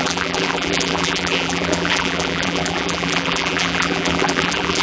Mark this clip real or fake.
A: fake